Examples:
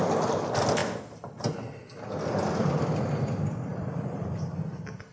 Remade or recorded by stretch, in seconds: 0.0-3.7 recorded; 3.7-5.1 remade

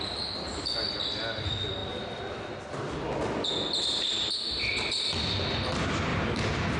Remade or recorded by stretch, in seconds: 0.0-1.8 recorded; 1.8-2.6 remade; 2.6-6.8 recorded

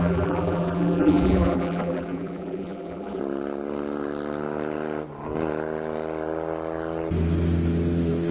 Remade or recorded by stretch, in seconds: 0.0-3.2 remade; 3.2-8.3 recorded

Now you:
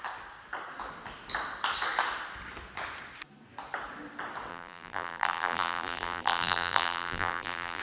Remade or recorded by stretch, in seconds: 0.0-4.5 recorded; 4.5-7.8 remade

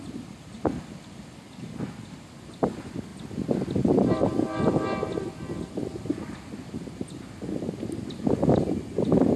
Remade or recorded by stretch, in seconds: 0.0-9.4 recorded

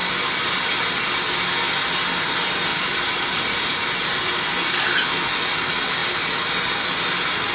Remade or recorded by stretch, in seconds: 0.0-0.8 remade; 0.8-2.7 recorded; 2.7-4.8 remade; 4.8-7.5 recorded

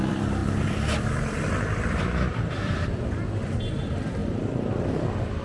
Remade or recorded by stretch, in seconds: 0.0-5.4 remade